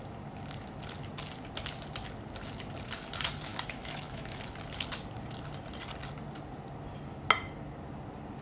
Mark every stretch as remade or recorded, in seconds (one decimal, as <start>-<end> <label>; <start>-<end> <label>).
0.0-3.5 recorded; 3.5-4.4 remade; 4.4-8.4 recorded